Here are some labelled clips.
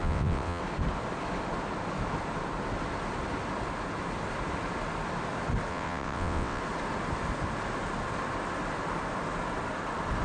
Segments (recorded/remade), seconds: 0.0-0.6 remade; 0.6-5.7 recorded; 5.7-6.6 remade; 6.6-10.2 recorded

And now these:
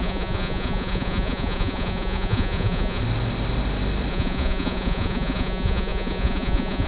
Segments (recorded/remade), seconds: 0.0-3.0 remade; 3.0-4.1 recorded; 4.1-6.9 remade

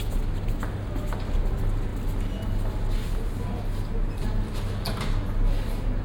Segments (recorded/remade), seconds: 0.0-6.0 recorded

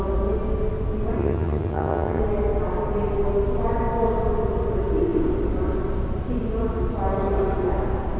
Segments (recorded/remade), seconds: 0.0-1.2 recorded; 1.2-2.2 remade; 2.2-8.2 recorded